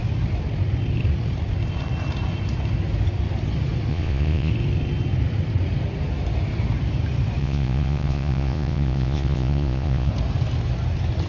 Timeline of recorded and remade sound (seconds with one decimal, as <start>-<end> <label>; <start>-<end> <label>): 0.0-3.9 recorded; 3.9-4.5 remade; 4.5-7.4 recorded; 7.4-10.1 remade; 10.1-11.3 recorded

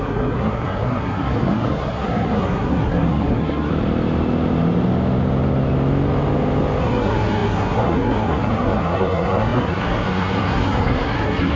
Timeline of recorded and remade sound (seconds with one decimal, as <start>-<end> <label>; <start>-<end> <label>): 0.0-3.7 remade; 3.7-6.8 recorded; 6.8-11.6 remade

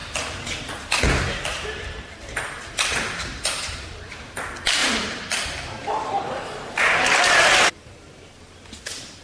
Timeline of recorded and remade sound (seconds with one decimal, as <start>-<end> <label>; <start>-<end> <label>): 0.0-1.5 recorded; 1.5-4.0 remade; 4.0-4.8 recorded; 4.8-7.3 remade; 7.3-9.2 recorded